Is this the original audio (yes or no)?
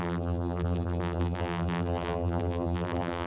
no